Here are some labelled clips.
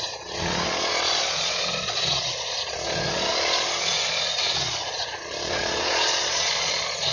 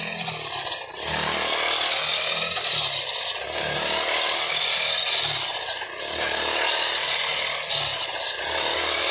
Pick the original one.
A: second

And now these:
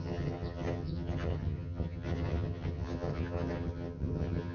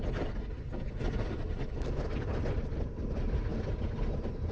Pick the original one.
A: second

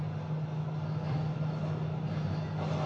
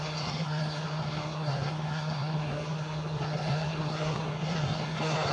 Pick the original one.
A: first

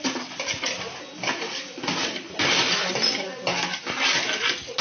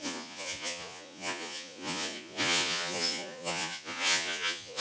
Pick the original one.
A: first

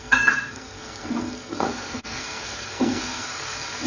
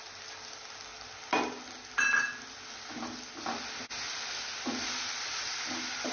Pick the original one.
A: second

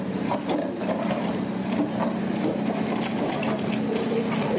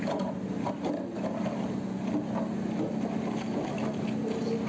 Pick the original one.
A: second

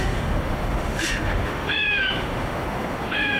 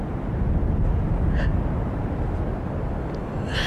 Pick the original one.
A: second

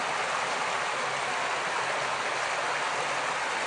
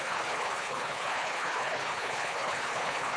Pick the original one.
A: first